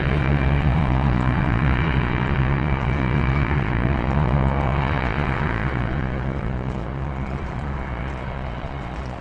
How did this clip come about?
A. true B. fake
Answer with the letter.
B